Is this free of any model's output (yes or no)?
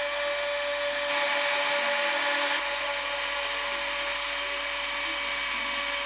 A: yes